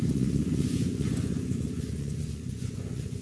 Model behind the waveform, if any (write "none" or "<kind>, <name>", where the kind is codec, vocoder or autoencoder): vocoder, Vocos